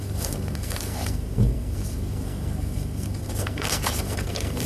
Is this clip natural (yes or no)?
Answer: no